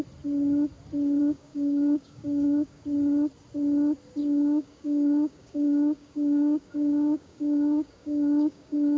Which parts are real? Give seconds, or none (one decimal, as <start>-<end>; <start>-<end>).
0.0-1.2; 2.8-4.2